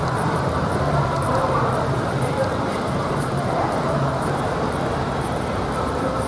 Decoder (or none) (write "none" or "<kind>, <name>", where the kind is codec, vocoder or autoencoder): vocoder, BigVGAN v2